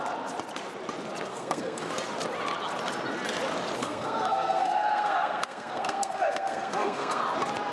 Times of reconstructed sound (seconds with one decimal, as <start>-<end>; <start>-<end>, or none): 1.3-1.9; 3.8-7.2